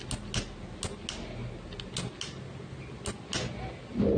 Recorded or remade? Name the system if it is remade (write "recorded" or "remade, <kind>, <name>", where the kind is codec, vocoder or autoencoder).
recorded